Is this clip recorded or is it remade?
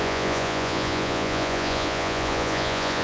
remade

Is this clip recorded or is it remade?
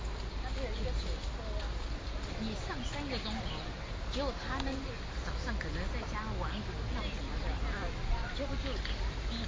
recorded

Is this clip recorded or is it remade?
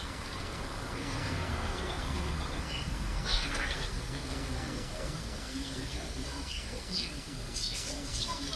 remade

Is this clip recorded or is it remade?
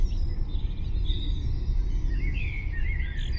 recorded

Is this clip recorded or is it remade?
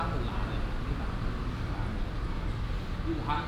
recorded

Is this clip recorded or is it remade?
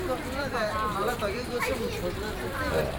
remade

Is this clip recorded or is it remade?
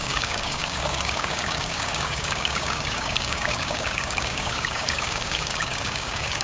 remade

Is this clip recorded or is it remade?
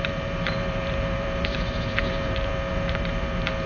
remade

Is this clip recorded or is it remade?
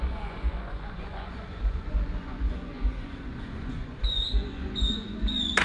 remade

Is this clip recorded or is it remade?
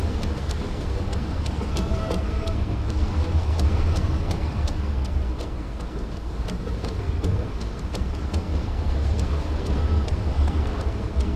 remade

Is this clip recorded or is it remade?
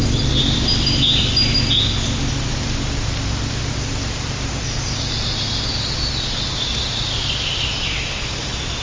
recorded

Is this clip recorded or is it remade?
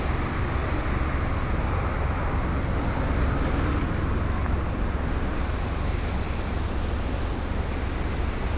recorded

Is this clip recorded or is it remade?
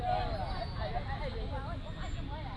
recorded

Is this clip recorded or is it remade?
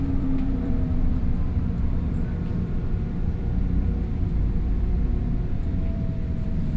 remade